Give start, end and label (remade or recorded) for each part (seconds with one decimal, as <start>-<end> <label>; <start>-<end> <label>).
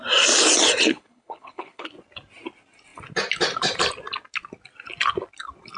0.0-0.9 recorded; 0.9-1.9 remade; 1.9-5.8 recorded